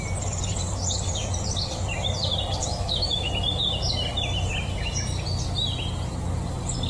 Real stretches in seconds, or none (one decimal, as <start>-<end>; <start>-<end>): 0.0-2.7; 3.3-6.9